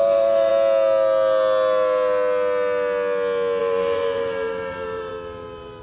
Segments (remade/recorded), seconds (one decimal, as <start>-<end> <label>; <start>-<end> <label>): 0.0-0.5 remade; 0.5-3.6 recorded; 3.6-5.1 remade; 5.1-5.8 recorded